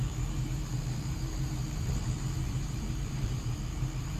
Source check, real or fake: fake